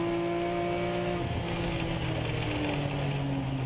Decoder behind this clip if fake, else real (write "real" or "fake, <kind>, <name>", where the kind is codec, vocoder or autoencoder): real